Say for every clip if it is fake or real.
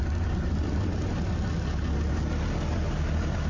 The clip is real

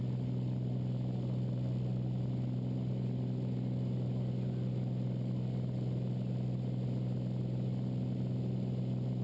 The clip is real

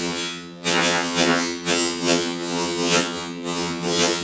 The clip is fake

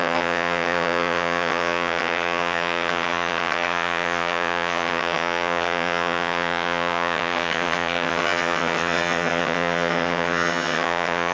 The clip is fake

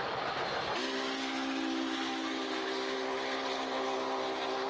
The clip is real